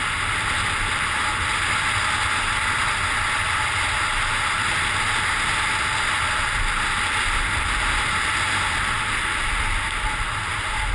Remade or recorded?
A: recorded